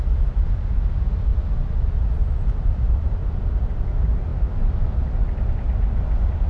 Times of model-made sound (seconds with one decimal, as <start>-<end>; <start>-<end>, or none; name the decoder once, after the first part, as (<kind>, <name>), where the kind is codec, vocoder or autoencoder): 0.0-1.3 (vocoder, BigVGAN v2); 2.1-3.2; 3.9-4.3